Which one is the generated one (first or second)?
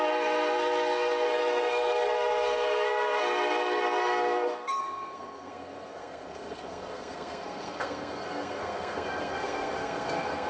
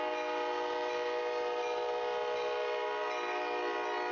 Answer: first